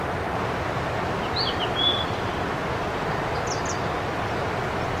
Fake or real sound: real